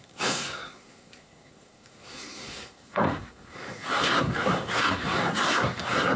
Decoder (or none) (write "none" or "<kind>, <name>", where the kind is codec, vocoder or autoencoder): codec, SNAC